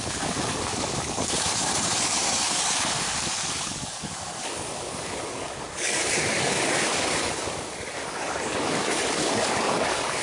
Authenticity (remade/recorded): remade